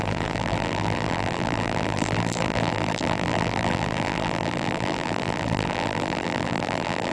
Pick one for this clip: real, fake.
fake